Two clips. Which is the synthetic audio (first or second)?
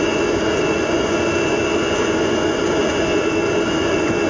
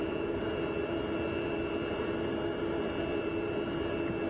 first